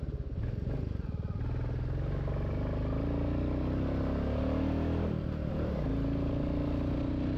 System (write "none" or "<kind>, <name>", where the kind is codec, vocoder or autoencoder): none